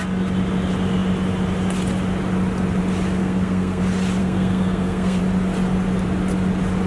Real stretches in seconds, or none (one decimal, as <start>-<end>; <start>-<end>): 0.0-3.2; 3.8-4.2; 5.2-6.9